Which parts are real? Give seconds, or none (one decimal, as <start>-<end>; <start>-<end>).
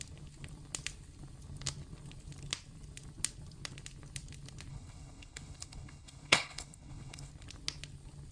0.0-4.7; 7.3-8.3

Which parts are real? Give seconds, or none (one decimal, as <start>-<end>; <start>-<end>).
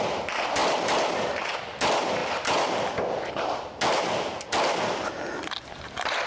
0.0-6.3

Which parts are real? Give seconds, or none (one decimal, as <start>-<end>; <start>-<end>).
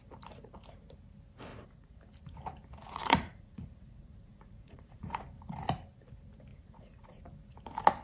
0.0-1.5; 2.0-2.8; 5.1-6.5; 7.2-8.0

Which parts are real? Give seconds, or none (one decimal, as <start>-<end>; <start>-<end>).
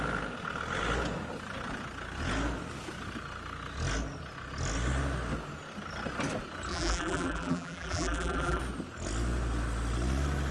0.0-6.7; 8.6-10.5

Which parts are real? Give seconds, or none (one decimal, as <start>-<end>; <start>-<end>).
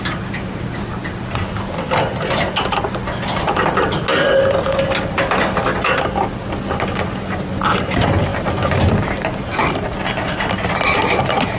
0.0-11.6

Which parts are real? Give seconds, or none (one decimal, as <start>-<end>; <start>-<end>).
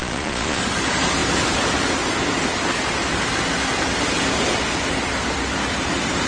0.6-6.3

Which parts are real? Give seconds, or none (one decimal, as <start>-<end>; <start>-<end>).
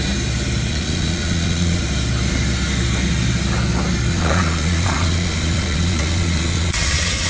0.0-0.7; 1.8-4.1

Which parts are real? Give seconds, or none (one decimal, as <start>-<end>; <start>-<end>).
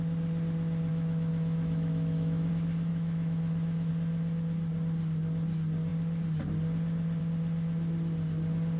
0.0-0.9; 2.5-2.9; 3.9-8.8